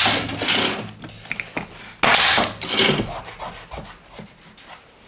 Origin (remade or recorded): recorded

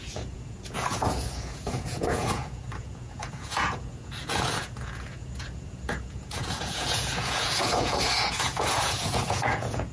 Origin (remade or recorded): remade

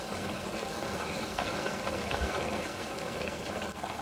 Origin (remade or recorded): remade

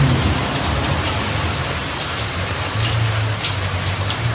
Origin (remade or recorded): recorded